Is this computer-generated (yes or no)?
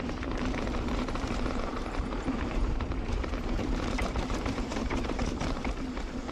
yes